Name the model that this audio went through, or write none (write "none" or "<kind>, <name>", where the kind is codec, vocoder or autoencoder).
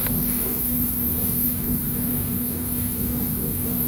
codec, DAC